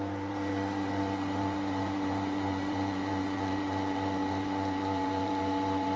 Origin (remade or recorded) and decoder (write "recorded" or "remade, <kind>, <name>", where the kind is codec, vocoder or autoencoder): remade, vocoder, BigVGAN v2